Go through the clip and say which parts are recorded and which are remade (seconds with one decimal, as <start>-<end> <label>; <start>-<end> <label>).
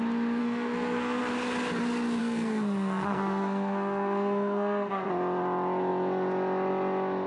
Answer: 0.0-0.4 recorded; 0.4-1.2 remade; 1.2-2.2 recorded; 2.2-5.1 remade; 5.1-7.3 recorded